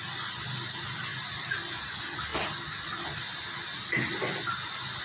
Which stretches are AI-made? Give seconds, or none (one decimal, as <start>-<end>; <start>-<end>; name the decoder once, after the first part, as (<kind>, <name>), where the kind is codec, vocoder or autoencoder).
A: none